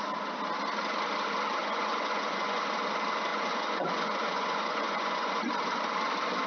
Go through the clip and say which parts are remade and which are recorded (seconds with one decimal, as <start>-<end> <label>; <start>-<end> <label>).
0.0-1.6 recorded; 1.6-2.6 remade; 2.6-3.3 recorded; 3.3-5.5 remade; 5.5-6.5 recorded